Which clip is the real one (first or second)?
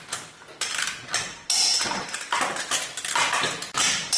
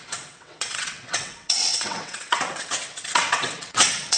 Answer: first